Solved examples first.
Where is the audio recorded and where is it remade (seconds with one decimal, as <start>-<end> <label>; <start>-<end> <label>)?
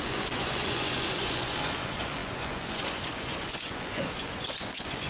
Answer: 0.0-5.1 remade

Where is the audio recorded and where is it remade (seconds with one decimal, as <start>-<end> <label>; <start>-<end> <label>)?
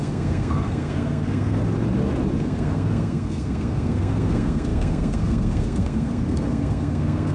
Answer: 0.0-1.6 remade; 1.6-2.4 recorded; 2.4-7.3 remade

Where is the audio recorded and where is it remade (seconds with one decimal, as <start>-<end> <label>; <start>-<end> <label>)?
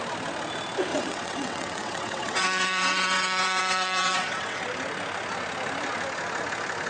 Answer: 0.0-0.9 recorded; 0.9-4.6 remade; 4.6-6.9 recorded